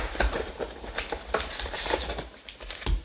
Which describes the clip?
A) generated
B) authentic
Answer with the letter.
B